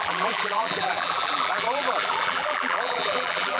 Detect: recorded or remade remade